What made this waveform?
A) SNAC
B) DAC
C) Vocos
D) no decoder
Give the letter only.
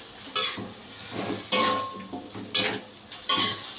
D